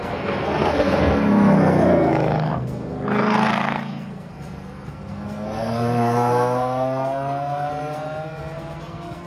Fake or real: fake